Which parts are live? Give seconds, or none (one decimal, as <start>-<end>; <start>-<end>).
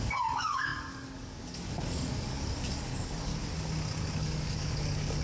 3.3-4.0